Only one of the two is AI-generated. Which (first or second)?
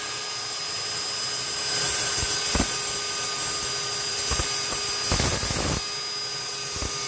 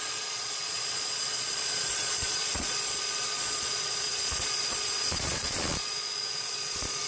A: second